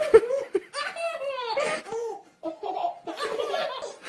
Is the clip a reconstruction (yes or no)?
no